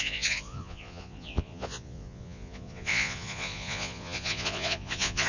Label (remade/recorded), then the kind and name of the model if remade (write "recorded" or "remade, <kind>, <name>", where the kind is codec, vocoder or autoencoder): remade, vocoder, Vocos